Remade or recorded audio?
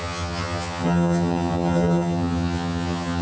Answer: remade